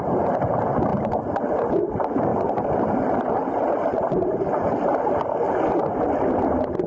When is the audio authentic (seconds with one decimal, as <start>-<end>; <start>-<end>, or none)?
0.0-0.9; 1.9-2.3; 6.4-6.9